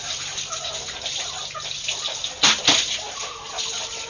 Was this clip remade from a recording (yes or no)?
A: no